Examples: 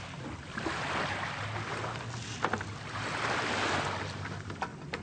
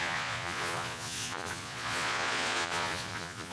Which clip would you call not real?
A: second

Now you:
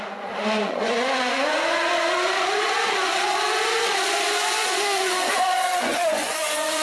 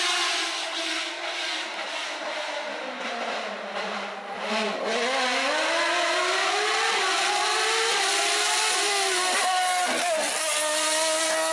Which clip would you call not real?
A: first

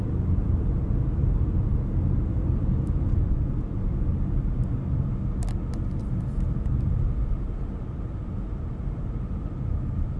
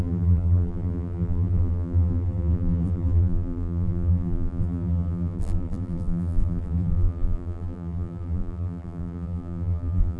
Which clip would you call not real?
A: second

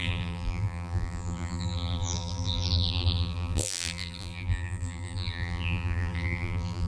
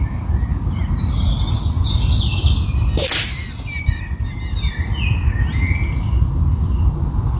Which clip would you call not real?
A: first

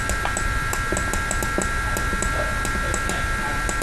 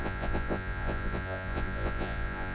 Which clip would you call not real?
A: second